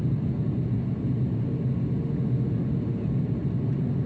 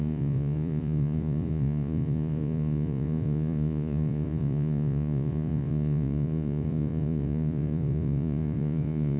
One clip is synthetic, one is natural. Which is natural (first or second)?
first